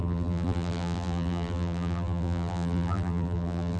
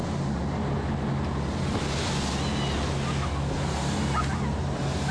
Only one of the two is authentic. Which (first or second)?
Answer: second